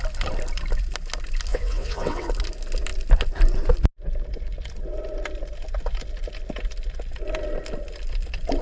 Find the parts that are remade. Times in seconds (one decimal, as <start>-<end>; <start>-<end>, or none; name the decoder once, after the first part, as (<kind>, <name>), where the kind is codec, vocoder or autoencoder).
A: 1.5-2.3 (vocoder, WaveNeXt)